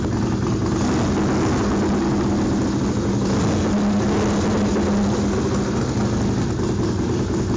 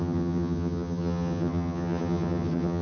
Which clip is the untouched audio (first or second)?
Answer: first